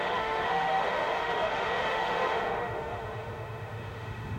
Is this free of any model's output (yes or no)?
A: no